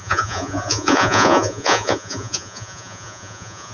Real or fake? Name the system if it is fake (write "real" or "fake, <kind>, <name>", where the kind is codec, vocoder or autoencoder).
fake, vocoder, Vocos